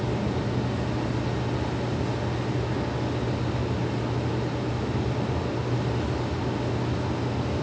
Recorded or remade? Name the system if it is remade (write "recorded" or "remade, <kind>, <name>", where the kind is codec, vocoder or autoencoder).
recorded